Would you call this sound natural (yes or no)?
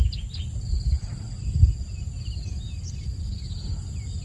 yes